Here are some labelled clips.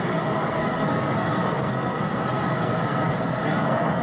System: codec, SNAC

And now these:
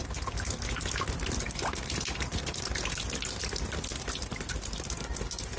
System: none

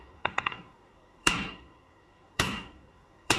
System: codec, SNAC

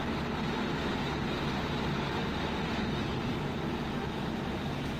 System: none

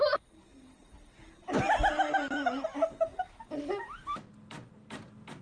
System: none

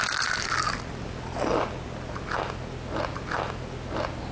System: none